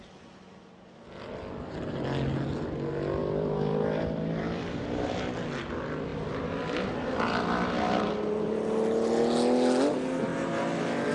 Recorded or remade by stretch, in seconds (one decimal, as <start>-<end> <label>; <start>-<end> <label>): 0.0-3.2 recorded; 3.2-4.4 remade; 4.4-6.1 recorded; 6.1-6.9 remade; 6.9-11.1 recorded